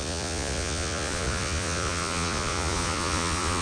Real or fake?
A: fake